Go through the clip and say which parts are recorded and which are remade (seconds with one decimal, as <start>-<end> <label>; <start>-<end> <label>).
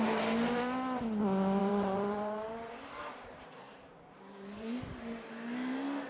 0.0-1.6 recorded; 1.6-5.3 remade; 5.3-6.1 recorded